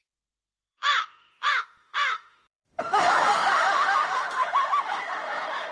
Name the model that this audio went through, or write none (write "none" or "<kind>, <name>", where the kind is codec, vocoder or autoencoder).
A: autoencoder, DAC-VAE